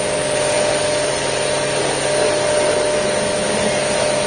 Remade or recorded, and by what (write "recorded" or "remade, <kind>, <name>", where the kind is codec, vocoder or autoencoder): recorded